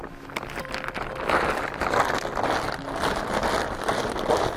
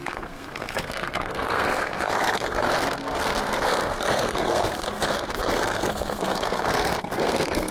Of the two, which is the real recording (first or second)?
first